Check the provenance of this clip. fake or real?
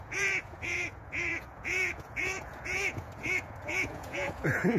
fake